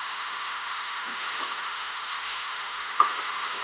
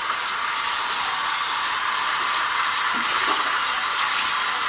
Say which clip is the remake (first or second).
first